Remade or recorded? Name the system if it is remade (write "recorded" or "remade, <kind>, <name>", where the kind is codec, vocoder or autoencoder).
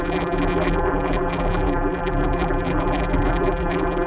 remade, vocoder, BigVGAN v2